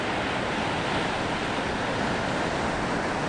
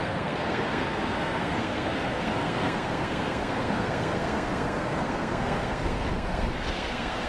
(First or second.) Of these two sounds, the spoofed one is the second